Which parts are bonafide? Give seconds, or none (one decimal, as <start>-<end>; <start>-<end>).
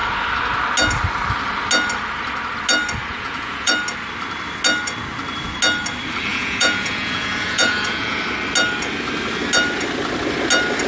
0.0-3.1; 3.7-6.3; 8.2-10.9